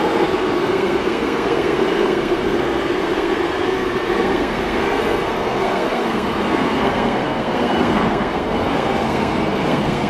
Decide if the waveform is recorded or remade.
remade